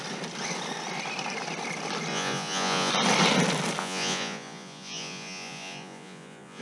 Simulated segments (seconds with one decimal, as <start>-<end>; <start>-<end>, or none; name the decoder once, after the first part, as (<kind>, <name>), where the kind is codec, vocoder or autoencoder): 2.1-2.9 (vocoder, Vocos); 3.8-6.6